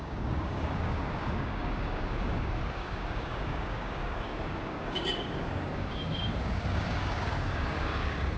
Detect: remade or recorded remade